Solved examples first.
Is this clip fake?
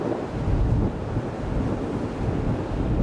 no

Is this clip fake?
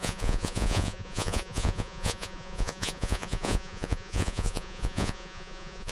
yes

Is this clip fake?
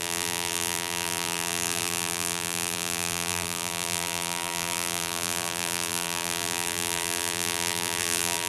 yes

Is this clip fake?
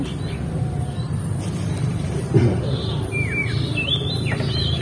yes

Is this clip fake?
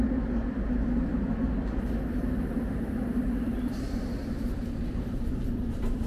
yes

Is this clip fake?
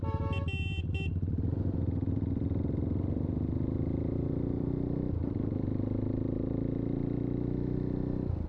no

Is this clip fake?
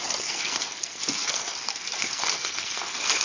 yes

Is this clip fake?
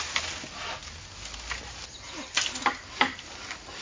no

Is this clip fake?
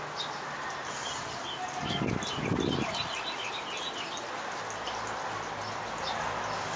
no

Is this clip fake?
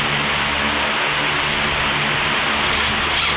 no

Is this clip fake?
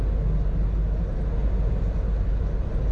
no